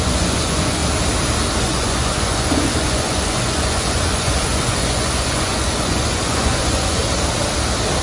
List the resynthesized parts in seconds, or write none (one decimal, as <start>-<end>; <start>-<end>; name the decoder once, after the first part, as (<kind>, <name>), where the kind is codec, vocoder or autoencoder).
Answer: 0.0-0.8 (vocoder, Vocos); 1.6-7.0